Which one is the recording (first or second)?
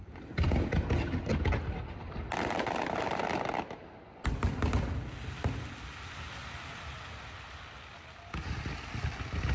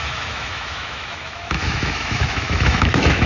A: first